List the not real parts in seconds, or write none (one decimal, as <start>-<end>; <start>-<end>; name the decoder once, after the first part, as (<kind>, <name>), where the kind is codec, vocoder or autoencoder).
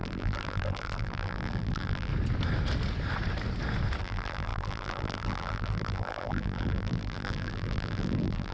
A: 0.0-2.1 (vocoder, BigVGAN v2); 4.0-8.5